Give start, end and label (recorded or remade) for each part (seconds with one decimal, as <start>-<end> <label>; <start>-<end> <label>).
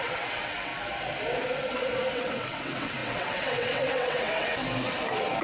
0.0-0.7 remade; 0.7-2.1 recorded; 2.1-4.6 remade; 4.6-5.4 recorded